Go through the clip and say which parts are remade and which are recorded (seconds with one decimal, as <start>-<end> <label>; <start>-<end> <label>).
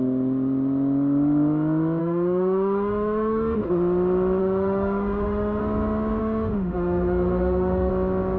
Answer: 0.0-2.0 recorded; 2.0-3.7 remade; 3.7-4.4 recorded; 4.4-5.6 remade; 5.6-6.2 recorded; 6.2-7.9 remade; 7.9-8.4 recorded